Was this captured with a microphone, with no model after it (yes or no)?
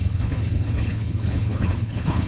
no